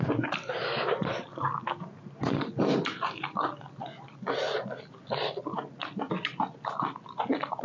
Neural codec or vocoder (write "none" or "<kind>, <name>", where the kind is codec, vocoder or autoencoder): none